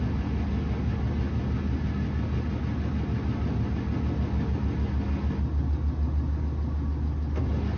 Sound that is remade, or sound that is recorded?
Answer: recorded